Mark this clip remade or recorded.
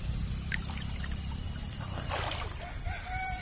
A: remade